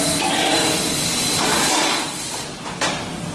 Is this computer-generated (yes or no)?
yes